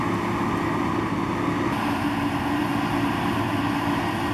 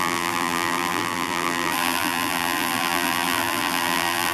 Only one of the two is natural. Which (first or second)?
first